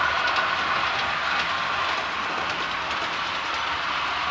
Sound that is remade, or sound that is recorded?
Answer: recorded